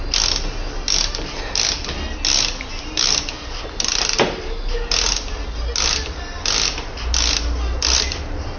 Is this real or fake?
real